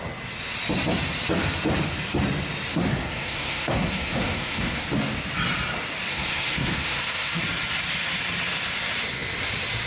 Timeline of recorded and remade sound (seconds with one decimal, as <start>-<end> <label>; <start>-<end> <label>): 0.0-2.7 recorded; 2.7-4.9 remade; 4.9-6.1 recorded; 6.1-7.4 remade; 7.4-9.9 recorded